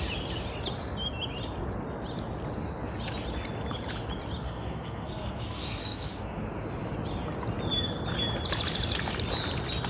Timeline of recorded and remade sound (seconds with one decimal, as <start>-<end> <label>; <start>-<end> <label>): 0.0-4.4 recorded; 4.4-6.4 remade; 6.4-9.9 recorded